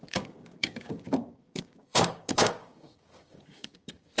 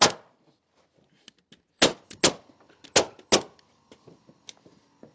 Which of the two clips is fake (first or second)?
first